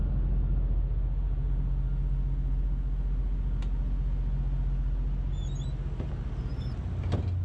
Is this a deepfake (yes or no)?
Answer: no